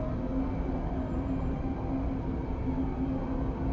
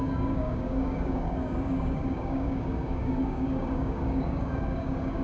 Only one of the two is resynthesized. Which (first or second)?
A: second